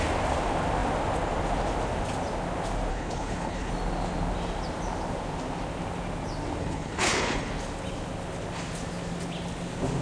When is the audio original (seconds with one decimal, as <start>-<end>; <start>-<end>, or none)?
0.0-2.9; 3.7-6.6; 7.5-10.0